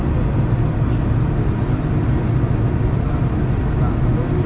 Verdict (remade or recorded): recorded